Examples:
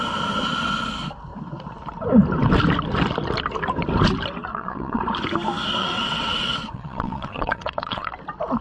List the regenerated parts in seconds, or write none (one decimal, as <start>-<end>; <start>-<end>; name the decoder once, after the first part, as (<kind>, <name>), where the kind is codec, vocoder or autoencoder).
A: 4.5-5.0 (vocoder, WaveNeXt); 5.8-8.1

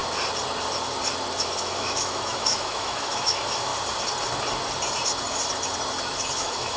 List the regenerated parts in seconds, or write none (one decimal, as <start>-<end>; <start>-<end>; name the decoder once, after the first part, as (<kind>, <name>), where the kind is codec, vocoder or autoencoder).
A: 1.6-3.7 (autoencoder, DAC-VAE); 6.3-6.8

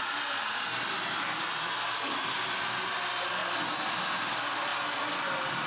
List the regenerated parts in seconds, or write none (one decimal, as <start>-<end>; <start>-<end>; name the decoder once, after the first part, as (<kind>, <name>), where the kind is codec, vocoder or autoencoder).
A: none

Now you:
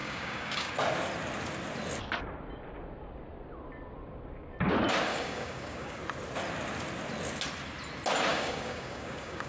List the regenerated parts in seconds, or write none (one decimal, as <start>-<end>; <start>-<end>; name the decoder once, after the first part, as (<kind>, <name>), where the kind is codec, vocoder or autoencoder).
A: 0.0-0.7 (codec, DAC); 5.1-6.0; 8.3-9.5

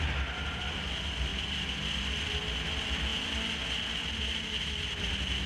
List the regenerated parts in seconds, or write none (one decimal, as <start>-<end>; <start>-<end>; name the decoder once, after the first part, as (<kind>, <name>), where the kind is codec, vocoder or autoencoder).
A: none

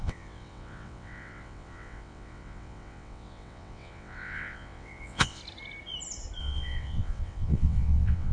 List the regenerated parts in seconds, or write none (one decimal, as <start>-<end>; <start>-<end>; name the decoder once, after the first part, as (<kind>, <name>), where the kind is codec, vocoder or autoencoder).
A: 0.0-5.4 (vocoder, WaveNeXt); 6.4-8.3

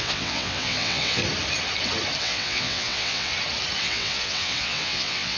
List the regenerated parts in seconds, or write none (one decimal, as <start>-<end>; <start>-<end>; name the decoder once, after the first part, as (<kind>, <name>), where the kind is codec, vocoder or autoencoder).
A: 0.0-1.2 (vocoder, WaveNeXt); 2.2-3.3; 3.8-5.4